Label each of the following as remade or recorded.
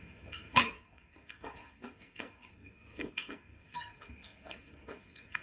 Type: remade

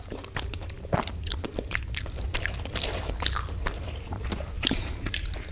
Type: remade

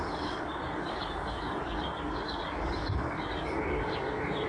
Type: remade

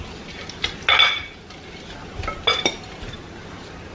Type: recorded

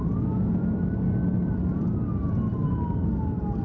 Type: recorded